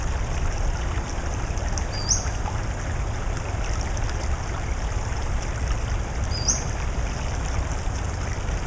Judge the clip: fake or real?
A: real